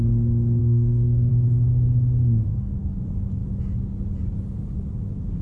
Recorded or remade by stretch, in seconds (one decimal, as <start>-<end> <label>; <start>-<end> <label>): 0.0-0.6 recorded; 0.6-1.3 remade; 1.3-2.5 recorded; 2.5-3.0 remade; 3.0-5.4 recorded